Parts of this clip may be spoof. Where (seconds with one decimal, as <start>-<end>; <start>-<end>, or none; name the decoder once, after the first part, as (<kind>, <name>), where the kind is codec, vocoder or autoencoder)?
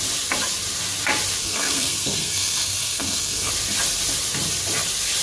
1.4-3.5 (codec, SNAC)